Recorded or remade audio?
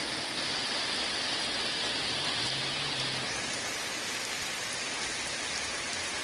recorded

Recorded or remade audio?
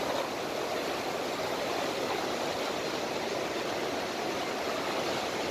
recorded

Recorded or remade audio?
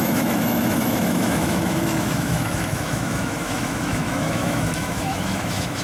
remade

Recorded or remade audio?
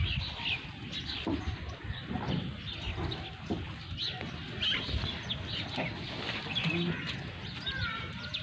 recorded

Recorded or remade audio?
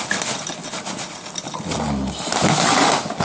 recorded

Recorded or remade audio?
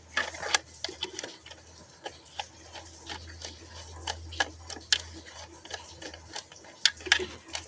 recorded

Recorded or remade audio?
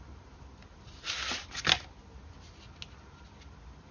recorded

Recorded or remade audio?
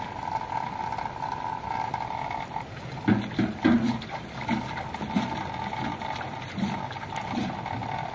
recorded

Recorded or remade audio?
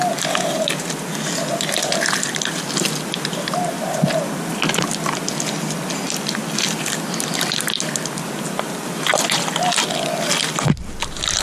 recorded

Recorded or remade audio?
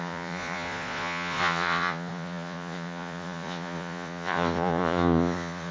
remade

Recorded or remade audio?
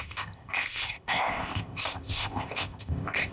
remade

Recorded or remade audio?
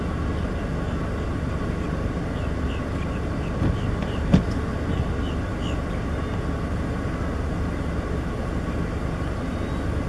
recorded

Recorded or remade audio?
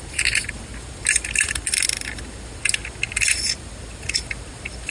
recorded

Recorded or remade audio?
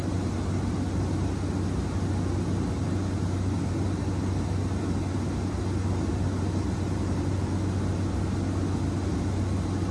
recorded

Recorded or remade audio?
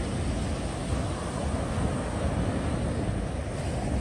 recorded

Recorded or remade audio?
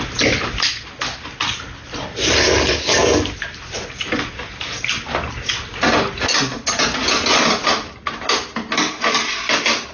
recorded